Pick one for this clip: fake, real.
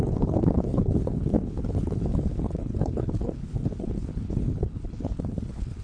fake